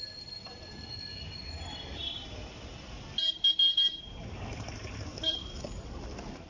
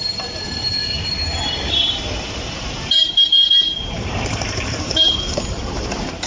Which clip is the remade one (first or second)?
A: second